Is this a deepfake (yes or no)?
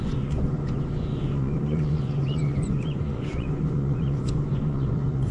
yes